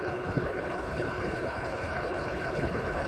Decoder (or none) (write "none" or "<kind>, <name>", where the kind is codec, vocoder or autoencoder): codec, HILCodec